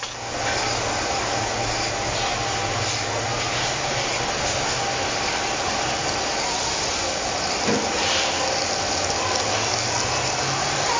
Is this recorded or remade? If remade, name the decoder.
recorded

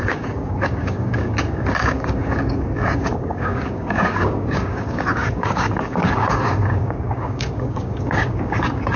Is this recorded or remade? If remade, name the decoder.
remade, codec, DAC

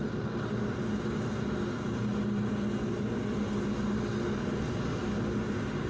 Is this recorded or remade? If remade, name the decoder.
recorded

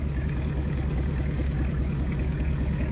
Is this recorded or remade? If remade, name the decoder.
remade, codec, DAC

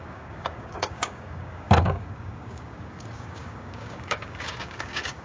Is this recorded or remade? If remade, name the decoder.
remade, codec, DAC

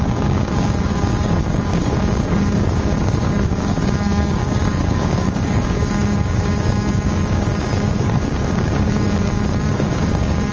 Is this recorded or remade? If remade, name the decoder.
remade, codec, DAC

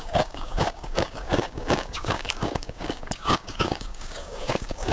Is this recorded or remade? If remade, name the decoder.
remade, codec, DAC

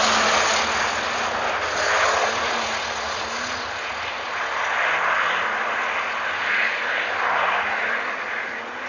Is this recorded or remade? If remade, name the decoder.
recorded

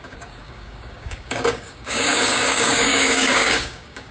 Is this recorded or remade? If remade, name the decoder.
remade, codec, DAC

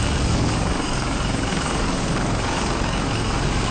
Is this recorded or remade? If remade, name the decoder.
remade, codec, DAC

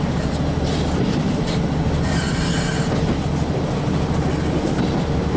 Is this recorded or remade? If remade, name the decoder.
recorded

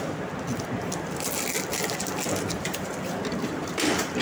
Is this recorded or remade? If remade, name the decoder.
recorded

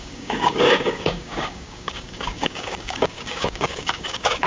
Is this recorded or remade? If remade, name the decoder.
remade, codec, DAC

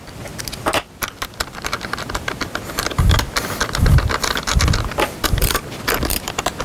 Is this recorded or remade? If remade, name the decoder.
recorded